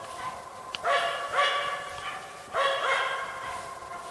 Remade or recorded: recorded